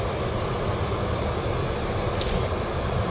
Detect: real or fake real